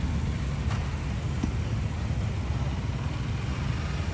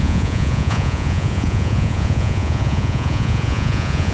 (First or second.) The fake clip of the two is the second